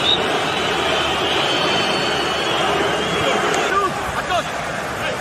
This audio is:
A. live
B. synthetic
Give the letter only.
A